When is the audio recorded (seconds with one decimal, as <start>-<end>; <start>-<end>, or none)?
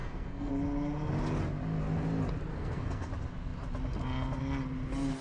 0.5-2.5; 3.1-5.2